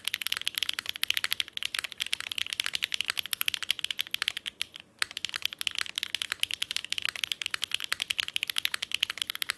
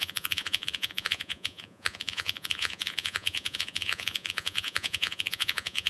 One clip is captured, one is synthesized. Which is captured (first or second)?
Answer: first